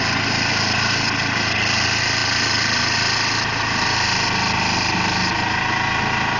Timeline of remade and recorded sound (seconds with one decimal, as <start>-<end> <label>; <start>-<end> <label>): 0.0-6.4 recorded